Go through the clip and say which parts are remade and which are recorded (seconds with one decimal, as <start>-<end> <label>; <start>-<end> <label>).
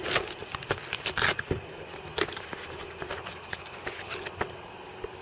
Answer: 0.0-0.4 recorded; 0.4-3.3 remade; 3.3-5.2 recorded